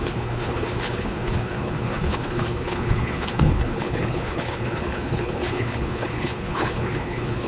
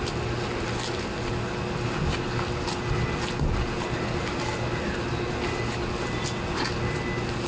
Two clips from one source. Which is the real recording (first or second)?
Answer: second